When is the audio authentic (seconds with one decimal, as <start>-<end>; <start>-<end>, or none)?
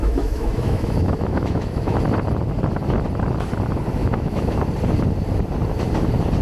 2.0-4.0; 4.6-6.4